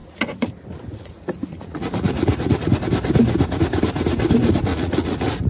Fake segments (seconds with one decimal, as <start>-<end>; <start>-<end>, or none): 0.0-0.5; 0.9-2.8; 4.7-5.5